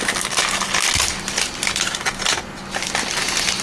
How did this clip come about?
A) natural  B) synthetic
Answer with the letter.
A